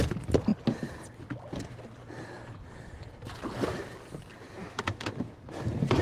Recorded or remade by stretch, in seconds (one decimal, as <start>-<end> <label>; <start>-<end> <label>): 0.0-4.6 recorded; 4.6-5.6 remade; 5.6-6.0 recorded